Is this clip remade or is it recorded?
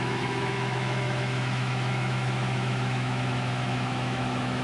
remade